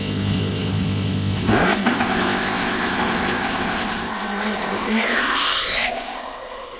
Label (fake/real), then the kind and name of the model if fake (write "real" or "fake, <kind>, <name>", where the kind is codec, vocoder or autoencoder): fake, codec, ZipCodec